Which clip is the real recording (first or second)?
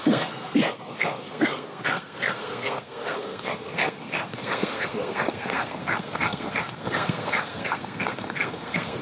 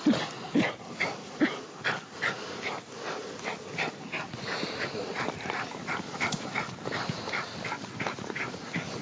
second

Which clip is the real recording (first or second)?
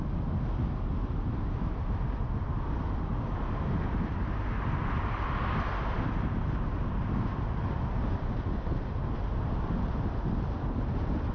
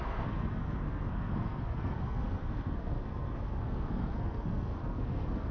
first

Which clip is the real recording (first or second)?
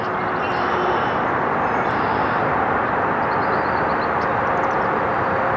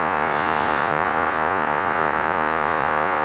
first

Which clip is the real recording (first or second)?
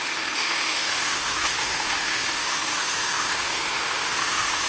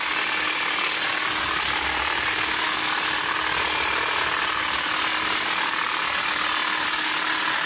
second